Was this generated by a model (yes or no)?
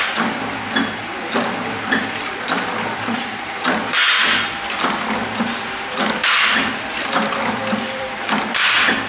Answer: yes